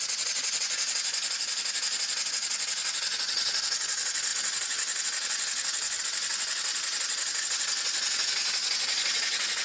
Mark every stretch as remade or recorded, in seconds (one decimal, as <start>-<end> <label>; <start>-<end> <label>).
0.0-1.1 remade; 1.1-2.3 recorded; 2.3-6.7 remade; 6.7-7.4 recorded; 7.4-9.6 remade